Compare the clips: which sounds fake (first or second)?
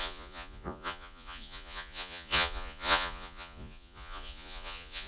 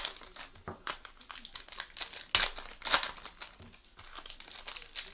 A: first